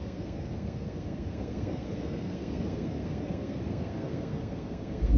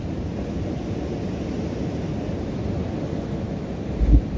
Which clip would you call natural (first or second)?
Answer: second